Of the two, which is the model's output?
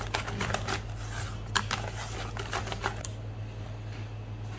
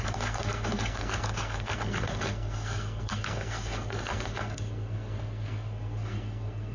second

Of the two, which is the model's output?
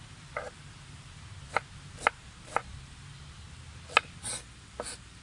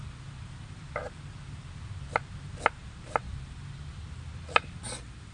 second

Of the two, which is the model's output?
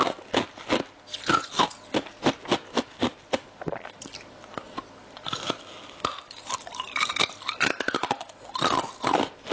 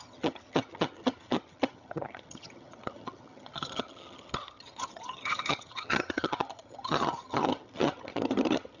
second